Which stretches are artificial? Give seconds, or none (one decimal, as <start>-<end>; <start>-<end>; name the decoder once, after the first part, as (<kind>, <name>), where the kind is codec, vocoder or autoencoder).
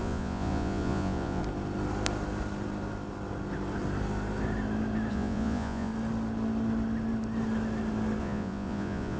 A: 0.0-1.4 (vocoder, Vocos); 5.1-5.9; 8.2-9.2